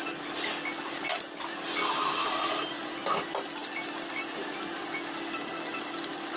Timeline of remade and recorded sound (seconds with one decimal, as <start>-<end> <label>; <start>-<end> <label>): 0.0-2.2 recorded; 2.2-3.1 remade; 3.1-6.4 recorded

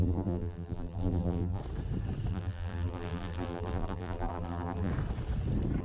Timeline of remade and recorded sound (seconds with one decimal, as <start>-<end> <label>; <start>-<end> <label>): 0.0-1.6 remade; 1.6-2.3 recorded; 2.3-4.9 remade; 4.9-5.8 recorded

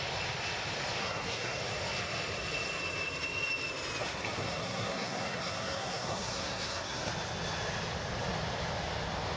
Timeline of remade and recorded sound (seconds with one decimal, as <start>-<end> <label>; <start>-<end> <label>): 0.0-1.0 recorded; 1.0-1.6 remade; 1.6-4.0 recorded; 4.0-7.1 remade; 7.1-9.4 recorded

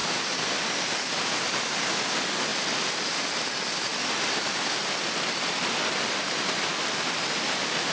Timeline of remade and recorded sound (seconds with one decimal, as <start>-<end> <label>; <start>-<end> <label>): 0.0-1.2 remade; 1.2-2.5 recorded; 2.5-7.2 remade; 7.2-7.9 recorded

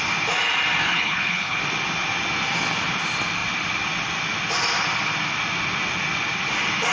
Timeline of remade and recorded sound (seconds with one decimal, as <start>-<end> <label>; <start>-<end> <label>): 0.0-0.8 recorded; 0.8-1.6 remade; 1.6-6.9 recorded

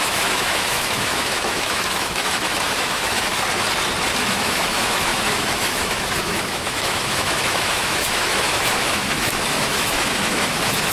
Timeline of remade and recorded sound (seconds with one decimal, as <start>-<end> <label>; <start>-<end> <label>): 0.0-3.3 remade; 3.3-4.2 recorded; 4.2-10.9 remade

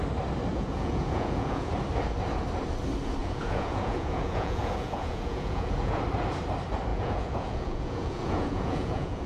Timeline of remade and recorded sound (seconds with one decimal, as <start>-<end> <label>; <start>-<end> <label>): 0.0-0.5 recorded; 0.5-1.7 remade; 1.7-3.2 recorded; 3.2-6.0 remade; 6.0-6.9 recorded; 6.9-9.3 remade

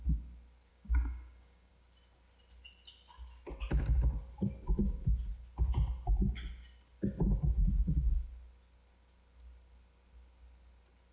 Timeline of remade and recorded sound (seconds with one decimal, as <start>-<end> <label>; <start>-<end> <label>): 0.0-0.7 recorded; 0.7-1.7 remade; 1.7-11.1 recorded